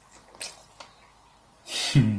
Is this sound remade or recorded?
recorded